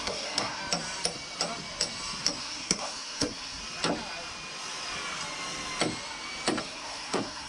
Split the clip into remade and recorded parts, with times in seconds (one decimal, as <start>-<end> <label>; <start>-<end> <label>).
0.0-0.6 remade; 0.6-2.4 recorded; 2.4-3.6 remade; 3.6-6.6 recorded; 6.6-7.5 remade